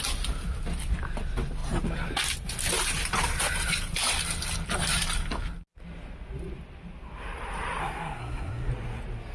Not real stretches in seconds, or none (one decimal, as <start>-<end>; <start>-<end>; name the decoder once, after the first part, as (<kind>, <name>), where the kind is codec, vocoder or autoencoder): 7.8-8.7 (codec, SNAC)